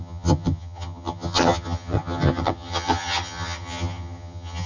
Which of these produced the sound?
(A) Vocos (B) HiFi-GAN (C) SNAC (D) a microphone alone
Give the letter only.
B